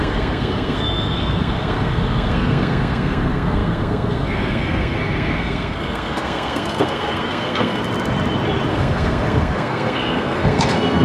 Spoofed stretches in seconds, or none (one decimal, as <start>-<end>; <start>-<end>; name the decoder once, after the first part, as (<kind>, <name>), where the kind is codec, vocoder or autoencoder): 0.0-7.8 (codec, SNAC); 8.7-11.0